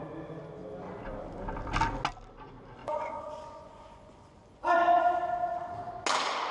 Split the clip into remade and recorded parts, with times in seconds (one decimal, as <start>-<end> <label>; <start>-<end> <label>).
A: 0.0-2.8 recorded; 2.8-5.0 remade; 5.0-6.5 recorded